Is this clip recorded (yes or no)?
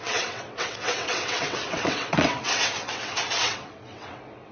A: no